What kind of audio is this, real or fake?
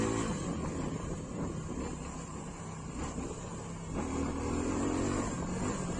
real